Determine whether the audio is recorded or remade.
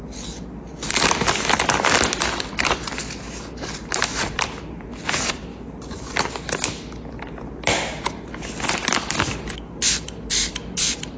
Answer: recorded